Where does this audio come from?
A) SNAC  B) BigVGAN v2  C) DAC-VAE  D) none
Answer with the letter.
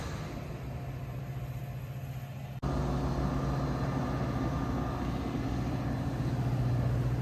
D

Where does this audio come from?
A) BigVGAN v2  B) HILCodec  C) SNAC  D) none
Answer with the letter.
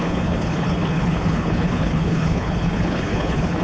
B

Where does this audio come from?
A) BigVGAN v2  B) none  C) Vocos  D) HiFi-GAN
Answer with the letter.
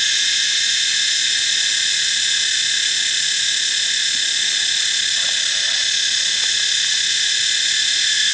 B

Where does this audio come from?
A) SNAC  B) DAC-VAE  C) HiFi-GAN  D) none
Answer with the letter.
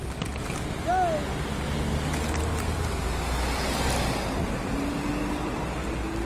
D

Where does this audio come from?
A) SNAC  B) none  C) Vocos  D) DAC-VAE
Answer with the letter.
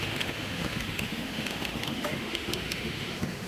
D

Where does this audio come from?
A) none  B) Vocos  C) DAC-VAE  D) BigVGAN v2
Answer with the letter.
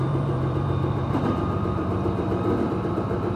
D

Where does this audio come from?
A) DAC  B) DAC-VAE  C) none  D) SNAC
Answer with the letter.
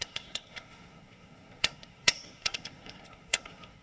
D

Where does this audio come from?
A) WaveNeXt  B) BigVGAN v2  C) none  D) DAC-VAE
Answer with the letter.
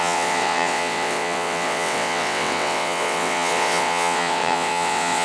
A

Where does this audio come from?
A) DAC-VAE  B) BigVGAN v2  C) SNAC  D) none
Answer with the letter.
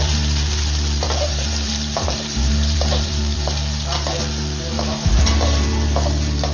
B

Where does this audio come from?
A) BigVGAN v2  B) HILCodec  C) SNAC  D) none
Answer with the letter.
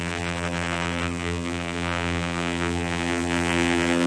A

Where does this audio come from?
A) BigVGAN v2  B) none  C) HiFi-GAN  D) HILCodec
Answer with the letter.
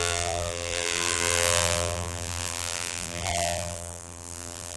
A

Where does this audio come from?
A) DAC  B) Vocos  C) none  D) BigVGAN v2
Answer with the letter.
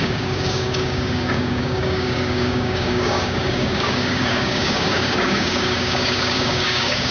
A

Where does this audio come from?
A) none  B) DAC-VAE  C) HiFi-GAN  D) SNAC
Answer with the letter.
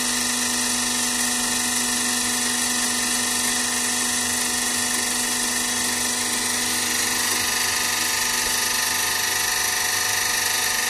A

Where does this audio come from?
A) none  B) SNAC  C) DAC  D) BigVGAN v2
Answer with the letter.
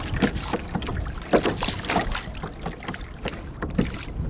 A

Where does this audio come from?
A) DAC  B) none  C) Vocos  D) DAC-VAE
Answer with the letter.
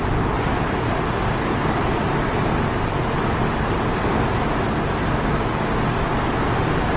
B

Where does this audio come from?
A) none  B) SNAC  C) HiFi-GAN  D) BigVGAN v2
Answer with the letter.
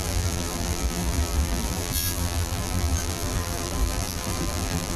D